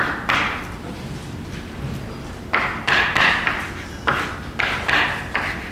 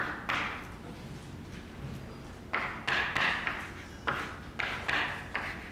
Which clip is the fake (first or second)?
first